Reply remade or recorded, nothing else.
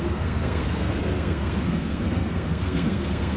remade